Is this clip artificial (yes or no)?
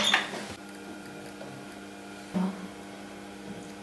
no